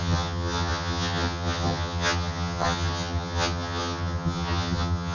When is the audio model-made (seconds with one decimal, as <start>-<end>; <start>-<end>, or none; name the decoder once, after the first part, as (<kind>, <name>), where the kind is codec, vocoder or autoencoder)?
0.0-5.1 (vocoder, HiFi-GAN)